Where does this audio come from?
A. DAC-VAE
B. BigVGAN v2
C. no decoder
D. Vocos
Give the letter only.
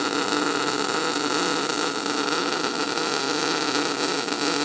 C